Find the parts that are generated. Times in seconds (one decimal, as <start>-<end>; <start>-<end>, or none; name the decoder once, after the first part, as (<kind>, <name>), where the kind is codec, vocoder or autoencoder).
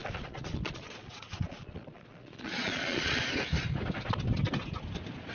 0.0-3.2 (vocoder, Vocos)